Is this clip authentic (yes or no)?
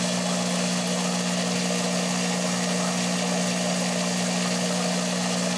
yes